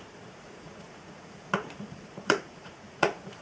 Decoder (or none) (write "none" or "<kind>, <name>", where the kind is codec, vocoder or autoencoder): vocoder, Vocos